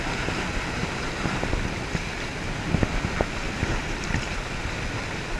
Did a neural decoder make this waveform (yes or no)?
no